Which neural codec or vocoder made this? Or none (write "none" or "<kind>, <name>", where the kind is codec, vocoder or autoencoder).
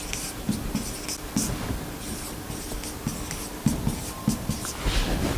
none